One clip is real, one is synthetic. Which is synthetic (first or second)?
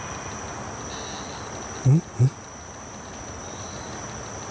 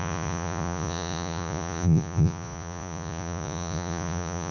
second